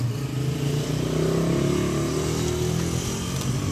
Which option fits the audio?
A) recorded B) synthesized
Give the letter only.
A